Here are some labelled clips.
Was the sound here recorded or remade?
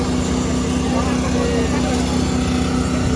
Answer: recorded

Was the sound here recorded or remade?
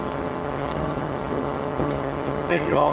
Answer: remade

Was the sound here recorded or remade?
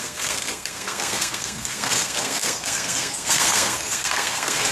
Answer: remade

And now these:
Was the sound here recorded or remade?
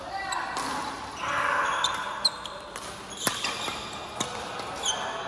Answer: recorded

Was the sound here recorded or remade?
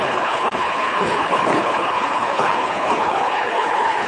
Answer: remade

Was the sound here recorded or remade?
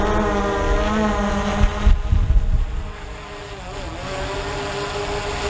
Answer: recorded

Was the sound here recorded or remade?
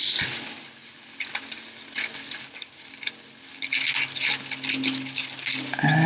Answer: recorded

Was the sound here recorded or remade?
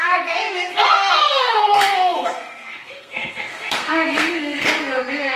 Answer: remade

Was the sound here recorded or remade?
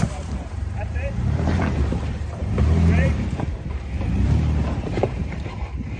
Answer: remade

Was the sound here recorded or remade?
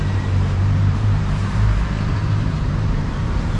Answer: remade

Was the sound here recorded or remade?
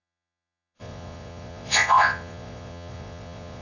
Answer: remade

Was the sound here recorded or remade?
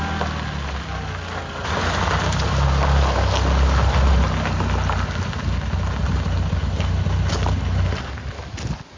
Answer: recorded